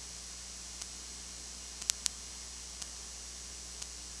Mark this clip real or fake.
real